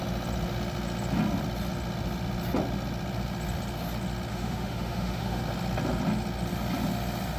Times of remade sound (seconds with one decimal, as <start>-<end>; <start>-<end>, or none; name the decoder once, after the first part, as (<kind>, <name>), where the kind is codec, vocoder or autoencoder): 4.3-5.4 (autoencoder, DAC-VAE)